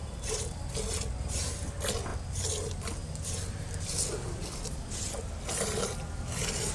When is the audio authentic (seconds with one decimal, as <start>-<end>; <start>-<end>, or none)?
0.6-6.7